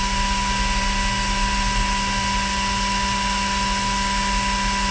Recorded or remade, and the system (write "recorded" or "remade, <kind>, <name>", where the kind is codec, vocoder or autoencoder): recorded